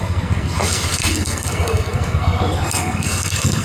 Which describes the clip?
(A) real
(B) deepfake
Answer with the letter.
B